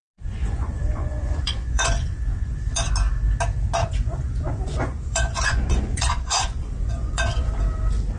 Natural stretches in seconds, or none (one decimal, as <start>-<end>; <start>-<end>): 2.9-3.8; 7.5-8.2